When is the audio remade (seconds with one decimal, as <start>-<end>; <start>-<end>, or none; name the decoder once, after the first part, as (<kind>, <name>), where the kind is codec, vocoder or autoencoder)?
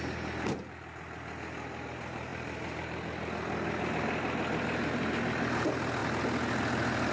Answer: none